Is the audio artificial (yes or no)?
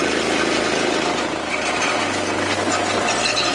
no